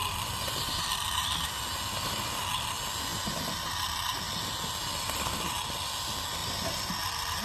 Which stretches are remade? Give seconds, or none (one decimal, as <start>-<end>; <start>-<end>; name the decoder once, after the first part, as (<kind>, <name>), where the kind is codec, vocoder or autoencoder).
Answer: none